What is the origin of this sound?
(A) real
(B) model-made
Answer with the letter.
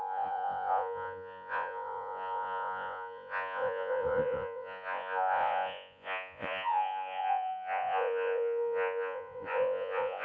B